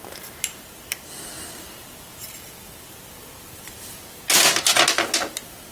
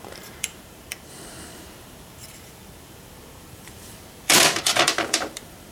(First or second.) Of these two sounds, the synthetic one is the second